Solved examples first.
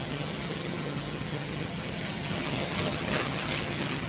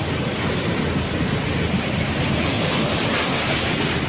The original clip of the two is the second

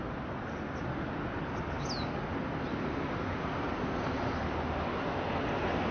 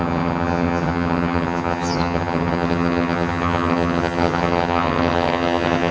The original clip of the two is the first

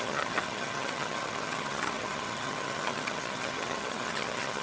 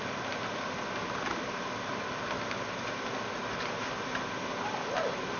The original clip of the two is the second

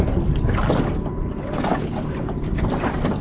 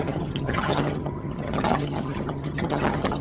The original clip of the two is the first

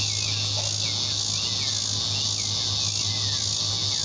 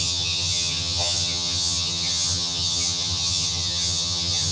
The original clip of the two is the first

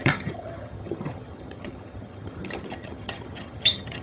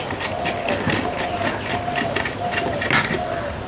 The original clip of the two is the second